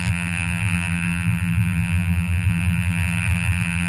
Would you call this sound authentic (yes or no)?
no